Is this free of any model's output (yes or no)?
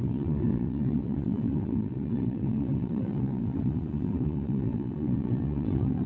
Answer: no